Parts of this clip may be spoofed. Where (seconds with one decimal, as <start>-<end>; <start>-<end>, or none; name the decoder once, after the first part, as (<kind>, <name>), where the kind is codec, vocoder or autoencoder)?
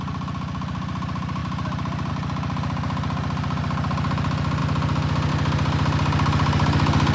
none